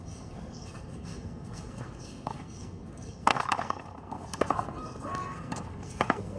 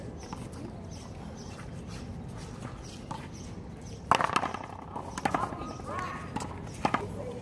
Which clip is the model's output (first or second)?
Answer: first